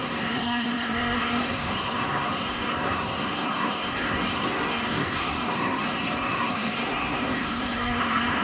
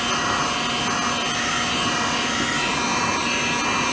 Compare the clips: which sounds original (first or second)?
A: second